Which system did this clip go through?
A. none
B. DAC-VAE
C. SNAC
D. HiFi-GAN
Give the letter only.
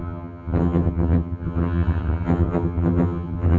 D